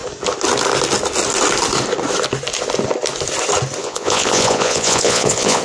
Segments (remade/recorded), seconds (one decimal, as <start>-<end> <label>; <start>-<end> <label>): 0.0-3.8 recorded; 3.8-5.6 remade